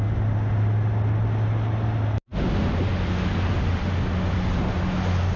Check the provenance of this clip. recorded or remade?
recorded